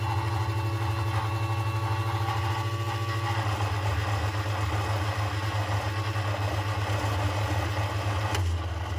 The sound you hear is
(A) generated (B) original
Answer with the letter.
B